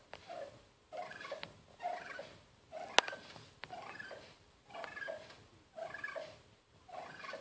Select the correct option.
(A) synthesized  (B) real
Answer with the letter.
B